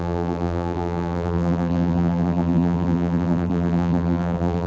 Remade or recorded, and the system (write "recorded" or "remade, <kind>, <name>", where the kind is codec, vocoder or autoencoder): remade, vocoder, BigVGAN v2